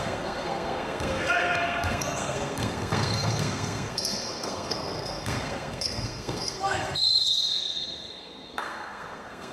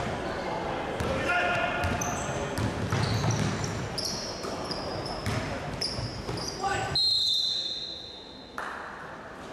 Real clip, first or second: second